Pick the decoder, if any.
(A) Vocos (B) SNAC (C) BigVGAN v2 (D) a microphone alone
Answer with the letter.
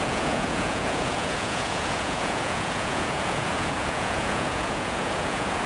A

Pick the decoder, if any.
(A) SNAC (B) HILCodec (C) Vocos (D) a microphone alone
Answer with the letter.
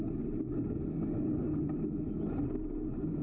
D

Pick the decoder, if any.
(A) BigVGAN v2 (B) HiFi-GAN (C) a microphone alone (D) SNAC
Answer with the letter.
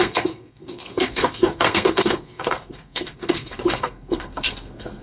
D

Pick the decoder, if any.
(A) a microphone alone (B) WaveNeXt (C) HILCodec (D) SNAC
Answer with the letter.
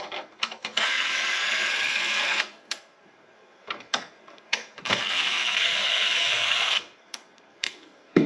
D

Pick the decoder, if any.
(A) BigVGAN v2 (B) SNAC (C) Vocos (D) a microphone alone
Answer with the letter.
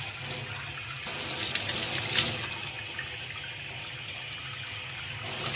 D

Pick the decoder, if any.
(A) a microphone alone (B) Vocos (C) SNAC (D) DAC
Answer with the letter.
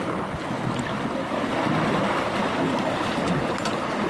A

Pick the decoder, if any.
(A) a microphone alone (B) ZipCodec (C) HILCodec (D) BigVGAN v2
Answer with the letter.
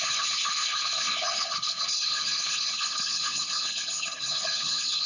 C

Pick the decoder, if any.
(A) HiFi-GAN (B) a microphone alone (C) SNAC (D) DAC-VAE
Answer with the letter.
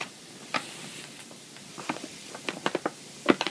B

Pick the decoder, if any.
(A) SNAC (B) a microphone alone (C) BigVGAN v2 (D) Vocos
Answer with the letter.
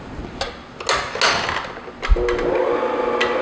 B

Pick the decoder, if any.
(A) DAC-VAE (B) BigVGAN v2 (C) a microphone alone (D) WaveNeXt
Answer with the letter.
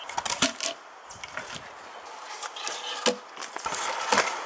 C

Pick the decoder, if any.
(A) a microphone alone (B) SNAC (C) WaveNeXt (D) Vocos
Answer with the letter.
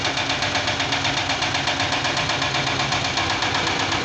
A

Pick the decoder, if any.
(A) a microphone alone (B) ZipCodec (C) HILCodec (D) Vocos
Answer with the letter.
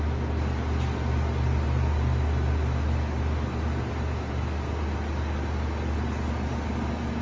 A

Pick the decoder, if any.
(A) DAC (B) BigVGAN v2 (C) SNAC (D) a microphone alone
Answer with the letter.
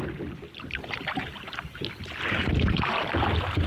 D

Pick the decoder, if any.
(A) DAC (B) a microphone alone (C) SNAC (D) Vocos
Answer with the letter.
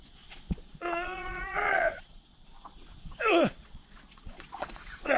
D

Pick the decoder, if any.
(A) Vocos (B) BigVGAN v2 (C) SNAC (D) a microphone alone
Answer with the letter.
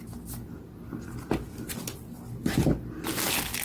D